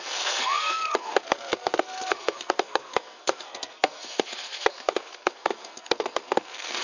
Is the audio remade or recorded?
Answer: remade